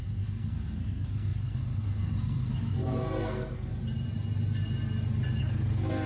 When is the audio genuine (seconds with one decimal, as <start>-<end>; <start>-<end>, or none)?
3.7-5.4